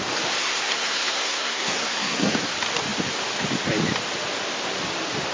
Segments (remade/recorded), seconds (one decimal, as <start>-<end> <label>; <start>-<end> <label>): 0.0-0.4 recorded; 0.4-2.4 remade; 2.4-5.3 recorded